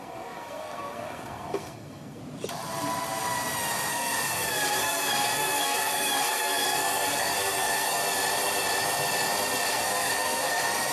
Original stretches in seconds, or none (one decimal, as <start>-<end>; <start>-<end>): 2.2-3.9; 8.0-9.7